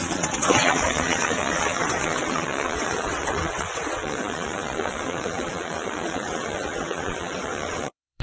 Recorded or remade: remade